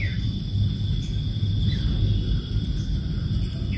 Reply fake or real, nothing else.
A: real